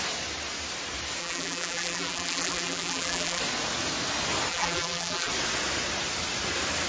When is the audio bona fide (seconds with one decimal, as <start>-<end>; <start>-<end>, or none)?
0.0-1.2; 3.4-4.5; 5.3-6.9